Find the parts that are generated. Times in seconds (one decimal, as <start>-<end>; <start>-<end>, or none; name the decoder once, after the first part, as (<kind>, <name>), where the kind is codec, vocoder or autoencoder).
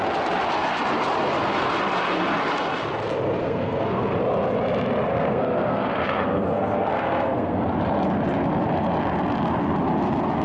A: 3.4-4.0 (codec, SNAC); 5.1-7.6